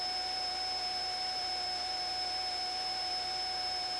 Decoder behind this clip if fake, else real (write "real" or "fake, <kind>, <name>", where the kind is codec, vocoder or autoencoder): fake, vocoder, BigVGAN v2